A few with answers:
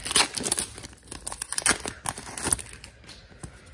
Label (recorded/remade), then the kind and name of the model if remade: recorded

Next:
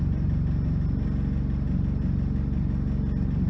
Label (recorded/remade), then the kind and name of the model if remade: recorded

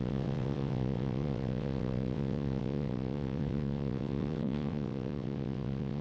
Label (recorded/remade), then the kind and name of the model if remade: remade, vocoder, WaveNeXt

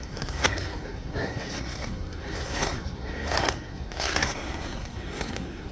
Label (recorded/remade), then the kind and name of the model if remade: remade, codec, SNAC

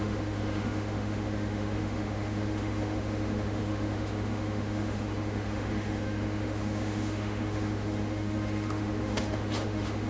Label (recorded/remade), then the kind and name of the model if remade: remade, autoencoder, DAC-VAE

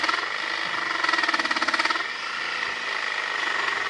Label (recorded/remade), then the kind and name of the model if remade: recorded